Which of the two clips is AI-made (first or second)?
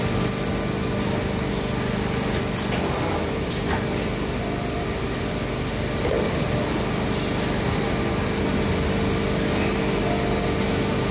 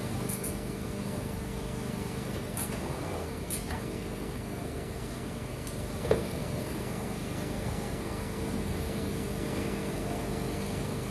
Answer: second